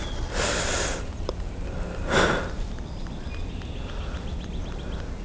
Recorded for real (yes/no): yes